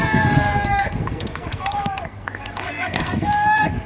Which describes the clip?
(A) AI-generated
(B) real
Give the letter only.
A